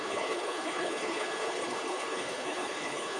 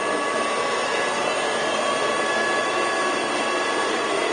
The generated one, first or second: first